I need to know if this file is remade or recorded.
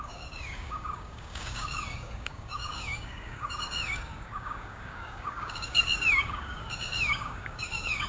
remade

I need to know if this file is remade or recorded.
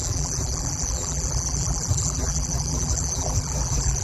remade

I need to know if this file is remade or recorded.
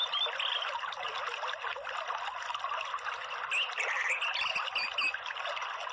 recorded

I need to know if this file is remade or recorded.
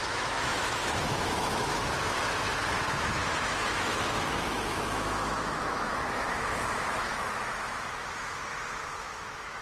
remade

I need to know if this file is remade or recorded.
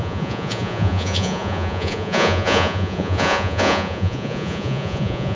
remade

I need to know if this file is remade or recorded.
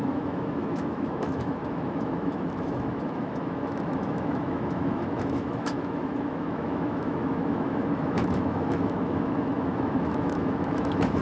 remade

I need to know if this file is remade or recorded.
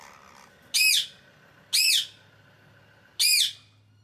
recorded